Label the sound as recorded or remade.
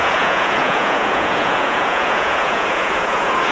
remade